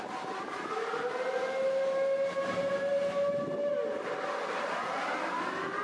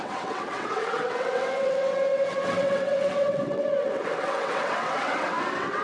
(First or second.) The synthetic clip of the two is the second